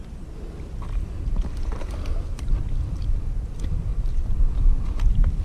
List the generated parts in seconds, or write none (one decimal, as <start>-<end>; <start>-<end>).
1.7-2.6; 3.9-4.5